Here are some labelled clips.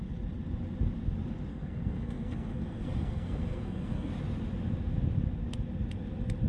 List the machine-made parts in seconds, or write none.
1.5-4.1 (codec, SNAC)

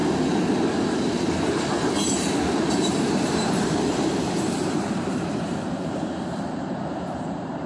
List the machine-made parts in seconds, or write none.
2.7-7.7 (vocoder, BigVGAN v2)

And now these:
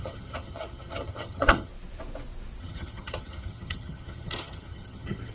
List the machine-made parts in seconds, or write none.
0.0-1.7 (vocoder, HiFi-GAN); 2.6-5.3